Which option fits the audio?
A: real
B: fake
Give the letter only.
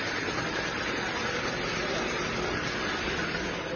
A